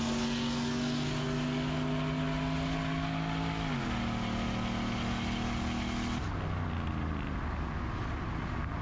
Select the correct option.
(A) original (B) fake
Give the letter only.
A